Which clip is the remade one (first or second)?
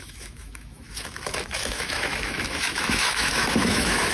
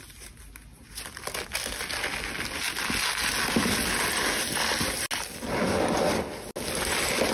first